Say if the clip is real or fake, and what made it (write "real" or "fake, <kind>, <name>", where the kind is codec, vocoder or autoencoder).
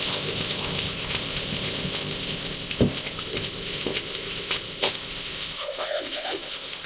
fake, codec, ZipCodec